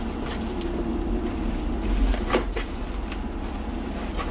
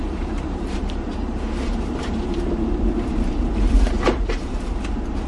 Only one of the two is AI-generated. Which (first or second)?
second